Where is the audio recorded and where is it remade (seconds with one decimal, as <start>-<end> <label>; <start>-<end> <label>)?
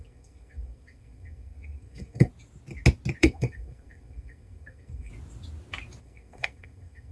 0.0-2.3 remade; 2.3-3.2 recorded; 3.2-5.1 remade; 5.1-6.0 recorded; 6.0-7.1 remade